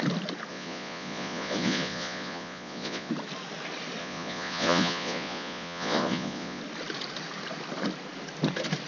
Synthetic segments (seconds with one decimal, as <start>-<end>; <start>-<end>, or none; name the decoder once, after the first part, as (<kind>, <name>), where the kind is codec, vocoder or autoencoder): 0.5-3.1 (vocoder, Vocos); 4.0-6.6